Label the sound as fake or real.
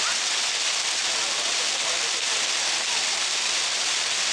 real